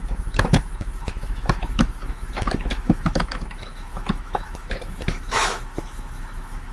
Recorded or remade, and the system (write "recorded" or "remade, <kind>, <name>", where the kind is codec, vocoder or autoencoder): remade, autoencoder, DAC-VAE